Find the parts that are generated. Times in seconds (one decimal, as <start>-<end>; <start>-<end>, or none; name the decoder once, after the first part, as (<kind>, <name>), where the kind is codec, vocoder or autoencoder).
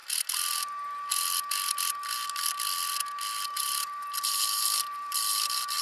3.5-5.8 (vocoder, BigVGAN v2)